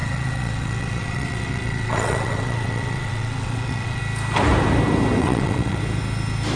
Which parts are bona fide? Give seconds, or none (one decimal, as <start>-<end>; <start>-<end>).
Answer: 4.0-5.2; 5.8-6.6